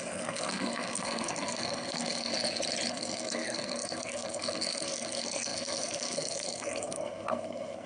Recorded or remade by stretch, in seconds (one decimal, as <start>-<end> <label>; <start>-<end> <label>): 0.0-2.3 remade; 2.3-2.9 recorded; 2.9-7.9 remade